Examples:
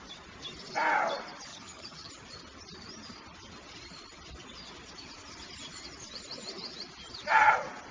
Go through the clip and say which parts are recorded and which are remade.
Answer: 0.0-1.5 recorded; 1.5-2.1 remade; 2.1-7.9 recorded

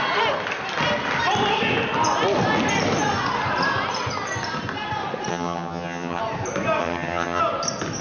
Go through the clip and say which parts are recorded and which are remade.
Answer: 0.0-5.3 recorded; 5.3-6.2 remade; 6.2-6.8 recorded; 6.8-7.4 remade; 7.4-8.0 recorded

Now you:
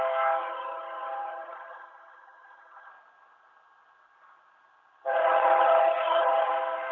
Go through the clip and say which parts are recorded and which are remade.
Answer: 0.0-0.4 recorded; 0.4-2.9 remade; 2.9-5.1 recorded; 5.1-6.5 remade; 6.5-6.9 recorded

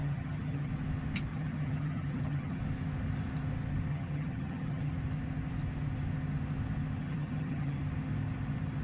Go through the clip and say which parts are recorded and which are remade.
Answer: 0.0-0.7 remade; 0.7-1.3 recorded; 1.3-2.6 remade; 2.6-3.9 recorded; 3.9-4.9 remade; 4.9-7.0 recorded; 7.0-7.8 remade; 7.8-8.8 recorded